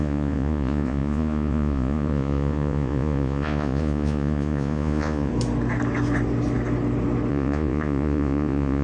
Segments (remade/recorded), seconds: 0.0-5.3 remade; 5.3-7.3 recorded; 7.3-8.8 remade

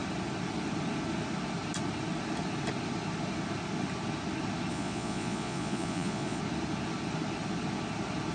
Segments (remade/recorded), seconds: 0.0-4.7 recorded; 4.7-6.4 remade; 6.4-8.3 recorded

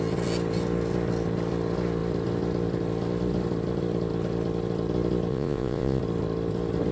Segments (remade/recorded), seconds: 0.0-5.3 recorded; 5.3-6.0 remade; 6.0-6.9 recorded

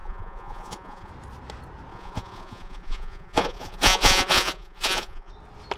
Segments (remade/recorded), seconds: 0.0-1.1 remade; 1.1-1.9 recorded; 1.9-5.3 remade; 5.3-5.8 recorded

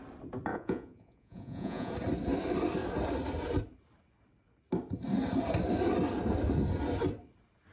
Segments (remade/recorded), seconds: 0.0-0.5 recorded; 0.5-1.9 remade; 1.9-7.7 recorded

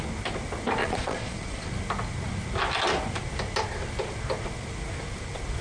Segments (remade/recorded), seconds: 0.0-0.8 recorded; 0.8-1.7 remade; 1.7-5.6 recorded

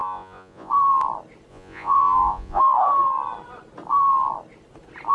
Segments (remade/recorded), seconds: 0.0-0.7 remade; 0.7-1.5 recorded; 1.5-2.6 remade; 2.6-5.1 recorded

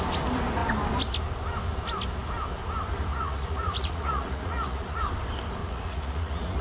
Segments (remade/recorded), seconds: 0.0-3.1 recorded; 3.1-5.0 remade; 5.0-5.6 recorded; 5.6-6.6 remade